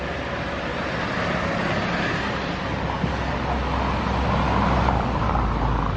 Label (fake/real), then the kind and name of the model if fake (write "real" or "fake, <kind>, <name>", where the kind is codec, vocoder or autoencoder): real